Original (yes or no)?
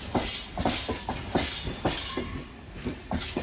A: yes